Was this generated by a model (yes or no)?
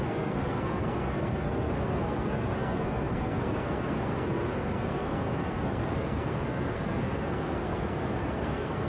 yes